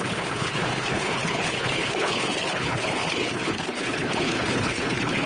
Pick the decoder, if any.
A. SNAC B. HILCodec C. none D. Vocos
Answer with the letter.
B